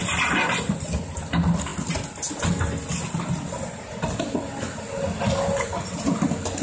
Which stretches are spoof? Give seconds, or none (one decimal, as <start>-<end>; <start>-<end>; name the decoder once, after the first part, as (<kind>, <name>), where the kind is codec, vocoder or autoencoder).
none